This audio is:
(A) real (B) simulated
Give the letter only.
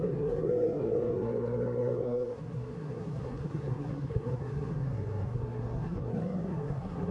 B